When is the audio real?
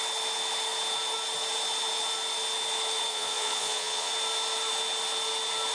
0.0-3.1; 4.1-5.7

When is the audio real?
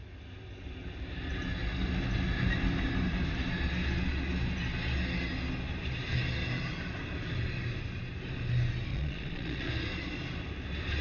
0.0-8.9; 9.7-11.0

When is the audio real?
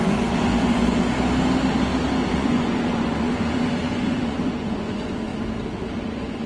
1.0-2.3; 5.3-6.1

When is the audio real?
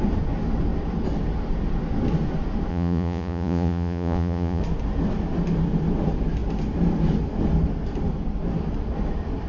0.0-2.7; 4.6-9.5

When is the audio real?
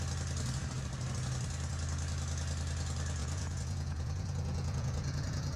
0.0-3.2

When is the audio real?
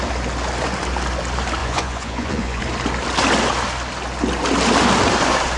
0.0-1.6; 2.6-5.6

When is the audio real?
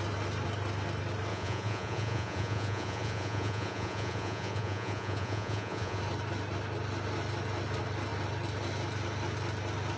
0.0-1.3; 6.0-10.0